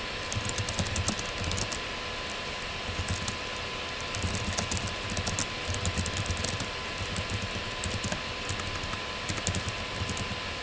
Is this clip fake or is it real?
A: real